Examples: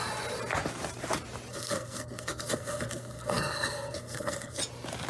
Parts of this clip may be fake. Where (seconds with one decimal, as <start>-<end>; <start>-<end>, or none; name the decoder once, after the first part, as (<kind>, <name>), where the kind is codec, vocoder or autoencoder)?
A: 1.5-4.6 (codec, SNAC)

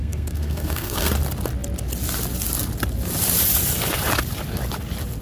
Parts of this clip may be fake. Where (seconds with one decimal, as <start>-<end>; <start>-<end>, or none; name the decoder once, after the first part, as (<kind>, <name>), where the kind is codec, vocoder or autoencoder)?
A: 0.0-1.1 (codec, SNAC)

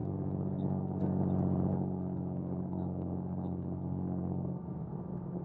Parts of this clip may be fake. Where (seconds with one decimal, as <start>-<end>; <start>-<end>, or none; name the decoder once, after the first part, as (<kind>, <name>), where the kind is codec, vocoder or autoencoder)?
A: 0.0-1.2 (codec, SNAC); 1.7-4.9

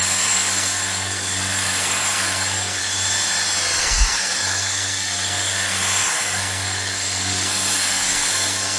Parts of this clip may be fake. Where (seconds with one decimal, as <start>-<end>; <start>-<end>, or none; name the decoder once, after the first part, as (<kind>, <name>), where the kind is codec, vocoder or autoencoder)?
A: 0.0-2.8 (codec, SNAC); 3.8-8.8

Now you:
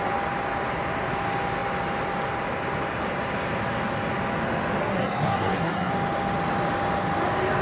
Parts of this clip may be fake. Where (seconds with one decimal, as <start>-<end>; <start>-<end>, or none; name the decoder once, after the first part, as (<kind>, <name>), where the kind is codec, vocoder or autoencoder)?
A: 4.8-5.9 (codec, SNAC)